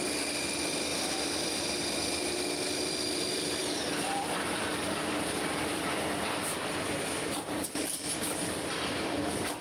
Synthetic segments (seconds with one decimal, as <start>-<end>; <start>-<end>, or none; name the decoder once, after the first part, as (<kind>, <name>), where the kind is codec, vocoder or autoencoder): 0.9-1.5 (vocoder, BigVGAN v2); 3.3-3.8; 4.7-6.1